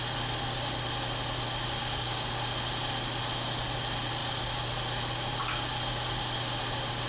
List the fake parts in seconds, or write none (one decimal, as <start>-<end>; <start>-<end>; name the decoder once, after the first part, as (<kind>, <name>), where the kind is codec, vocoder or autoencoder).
1.8-2.3 (codec, DAC)